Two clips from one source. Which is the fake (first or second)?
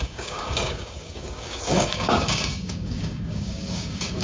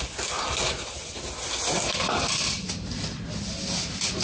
first